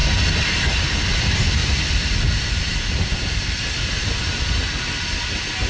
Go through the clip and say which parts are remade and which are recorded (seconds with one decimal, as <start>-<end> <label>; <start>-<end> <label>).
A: 0.0-5.7 recorded